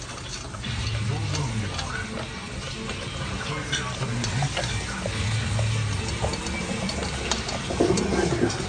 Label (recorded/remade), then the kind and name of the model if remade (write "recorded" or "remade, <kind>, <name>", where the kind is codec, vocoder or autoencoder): recorded